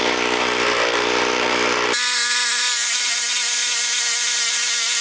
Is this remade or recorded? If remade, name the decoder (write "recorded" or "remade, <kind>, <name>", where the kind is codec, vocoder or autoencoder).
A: remade, vocoder, BigVGAN v2